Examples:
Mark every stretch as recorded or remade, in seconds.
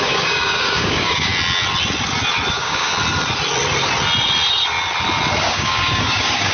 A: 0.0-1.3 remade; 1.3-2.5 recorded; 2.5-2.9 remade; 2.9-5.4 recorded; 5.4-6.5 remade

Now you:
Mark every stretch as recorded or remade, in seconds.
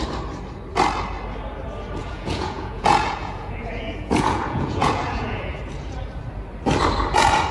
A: 0.0-2.0 recorded; 2.0-5.6 remade; 5.6-7.5 recorded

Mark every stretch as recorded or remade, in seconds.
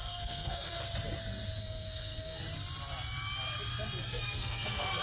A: 0.0-0.8 remade; 0.8-1.6 recorded; 1.6-2.4 remade; 2.4-4.0 recorded; 4.0-5.0 remade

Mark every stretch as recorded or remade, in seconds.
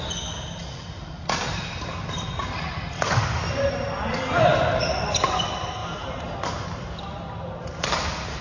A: 0.0-8.4 recorded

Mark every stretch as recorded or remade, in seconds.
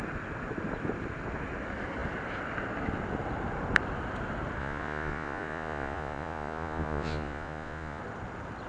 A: 0.0-4.6 recorded; 4.6-8.0 remade; 8.0-8.7 recorded